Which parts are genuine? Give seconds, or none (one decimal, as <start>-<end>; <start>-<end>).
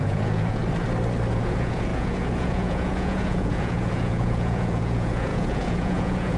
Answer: 0.6-1.3